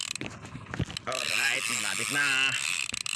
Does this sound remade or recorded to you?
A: recorded